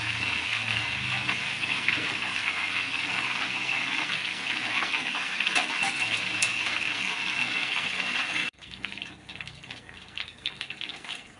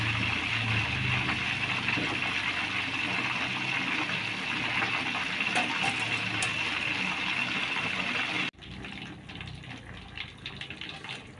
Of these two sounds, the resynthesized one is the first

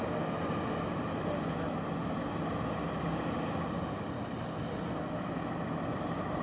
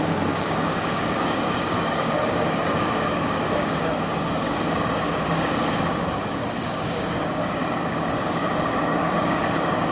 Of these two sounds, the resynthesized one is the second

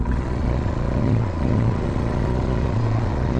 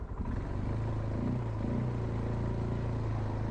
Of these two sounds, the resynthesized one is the first